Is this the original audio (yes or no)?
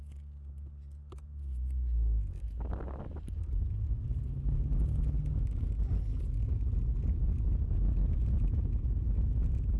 yes